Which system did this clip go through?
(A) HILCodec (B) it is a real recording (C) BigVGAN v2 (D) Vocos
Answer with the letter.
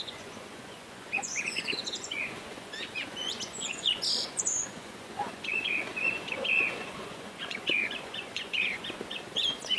D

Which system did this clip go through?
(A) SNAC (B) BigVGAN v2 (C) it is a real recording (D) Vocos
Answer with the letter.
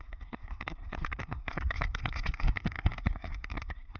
A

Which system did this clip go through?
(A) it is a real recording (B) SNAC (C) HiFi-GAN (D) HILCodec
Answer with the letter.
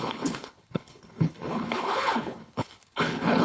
D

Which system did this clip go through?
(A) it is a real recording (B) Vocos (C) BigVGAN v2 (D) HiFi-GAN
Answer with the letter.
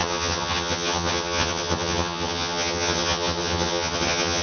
D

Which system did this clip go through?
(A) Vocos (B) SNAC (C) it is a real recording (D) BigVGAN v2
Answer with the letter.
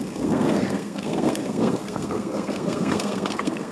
B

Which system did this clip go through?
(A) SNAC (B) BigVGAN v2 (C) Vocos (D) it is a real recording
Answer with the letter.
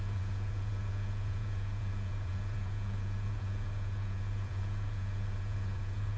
C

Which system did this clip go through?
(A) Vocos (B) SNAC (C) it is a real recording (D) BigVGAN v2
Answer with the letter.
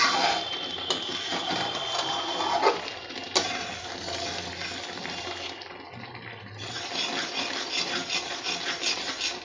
C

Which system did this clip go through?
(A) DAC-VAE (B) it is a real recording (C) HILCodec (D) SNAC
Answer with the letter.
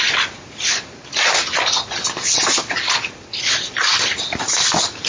B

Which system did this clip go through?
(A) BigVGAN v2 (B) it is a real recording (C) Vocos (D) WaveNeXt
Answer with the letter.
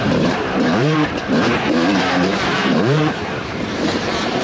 A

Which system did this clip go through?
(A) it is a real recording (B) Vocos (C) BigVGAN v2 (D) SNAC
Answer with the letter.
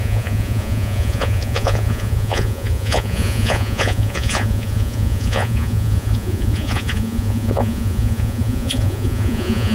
B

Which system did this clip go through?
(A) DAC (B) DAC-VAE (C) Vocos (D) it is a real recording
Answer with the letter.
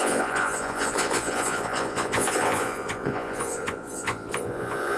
C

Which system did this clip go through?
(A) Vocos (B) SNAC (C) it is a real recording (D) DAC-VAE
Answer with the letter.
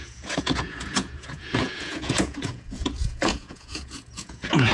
A